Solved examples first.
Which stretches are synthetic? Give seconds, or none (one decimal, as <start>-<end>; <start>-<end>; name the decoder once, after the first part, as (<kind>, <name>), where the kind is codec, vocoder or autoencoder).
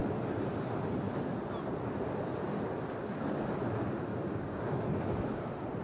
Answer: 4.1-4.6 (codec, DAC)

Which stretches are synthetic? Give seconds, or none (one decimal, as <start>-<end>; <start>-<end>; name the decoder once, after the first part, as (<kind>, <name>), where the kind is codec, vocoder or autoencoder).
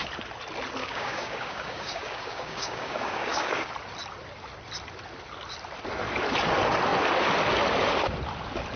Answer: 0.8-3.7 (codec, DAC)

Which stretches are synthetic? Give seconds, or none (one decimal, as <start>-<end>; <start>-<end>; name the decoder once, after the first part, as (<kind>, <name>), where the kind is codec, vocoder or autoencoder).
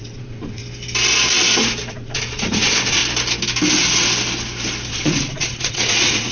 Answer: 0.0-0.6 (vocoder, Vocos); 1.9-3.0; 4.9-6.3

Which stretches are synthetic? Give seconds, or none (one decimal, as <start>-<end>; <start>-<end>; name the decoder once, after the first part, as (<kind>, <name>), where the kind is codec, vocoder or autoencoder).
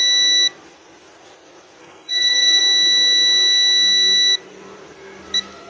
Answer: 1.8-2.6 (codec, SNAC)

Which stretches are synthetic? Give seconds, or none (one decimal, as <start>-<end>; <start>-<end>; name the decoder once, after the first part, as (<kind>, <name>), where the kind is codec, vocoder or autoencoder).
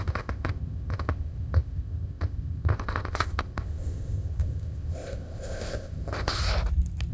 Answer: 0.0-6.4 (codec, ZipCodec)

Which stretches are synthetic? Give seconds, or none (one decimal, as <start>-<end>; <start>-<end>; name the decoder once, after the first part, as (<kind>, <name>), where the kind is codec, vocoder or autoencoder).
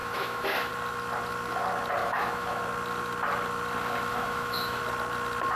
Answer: 0.0-0.7 (autoencoder, DAC-VAE); 2.0-2.6; 4.1-4.8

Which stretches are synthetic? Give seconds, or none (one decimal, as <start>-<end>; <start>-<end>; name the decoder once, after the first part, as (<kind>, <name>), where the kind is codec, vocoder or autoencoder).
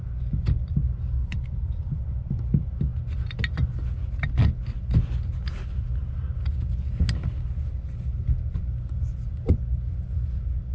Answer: 1.2-2.3 (vocoder, BigVGAN v2); 6.0-6.5